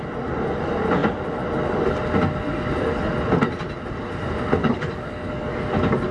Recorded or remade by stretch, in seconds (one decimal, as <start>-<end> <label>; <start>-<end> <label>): 0.0-4.6 recorded; 4.6-5.6 remade; 5.6-6.1 recorded

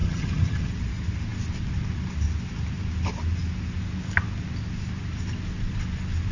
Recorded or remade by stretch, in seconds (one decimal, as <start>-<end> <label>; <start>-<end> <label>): 0.0-0.7 remade; 0.7-6.3 recorded

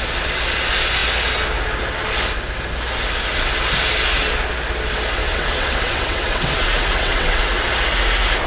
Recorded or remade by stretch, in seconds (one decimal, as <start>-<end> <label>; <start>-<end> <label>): 0.0-5.2 recorded; 5.2-7.4 remade; 7.4-8.5 recorded

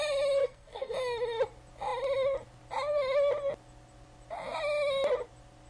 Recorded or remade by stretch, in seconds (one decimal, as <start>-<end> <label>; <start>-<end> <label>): 0.0-0.4 recorded; 0.4-0.9 remade; 0.9-5.7 recorded

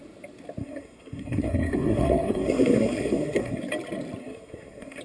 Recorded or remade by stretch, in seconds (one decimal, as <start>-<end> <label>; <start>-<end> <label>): 0.0-0.6 recorded; 0.6-3.6 remade; 3.6-4.2 recorded; 4.2-5.0 remade

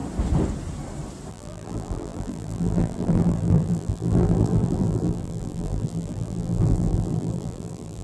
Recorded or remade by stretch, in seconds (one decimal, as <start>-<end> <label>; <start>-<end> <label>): 0.0-1.3 recorded; 1.3-8.0 remade

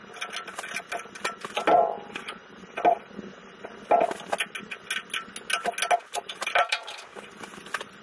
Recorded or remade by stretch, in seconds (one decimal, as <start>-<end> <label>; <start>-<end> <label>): 0.0-6.0 recorded; 6.0-8.0 remade